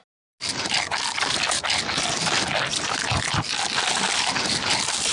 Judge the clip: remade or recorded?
recorded